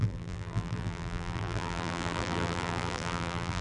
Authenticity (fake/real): fake